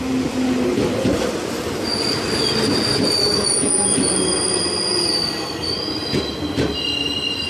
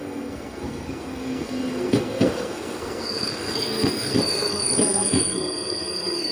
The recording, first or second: first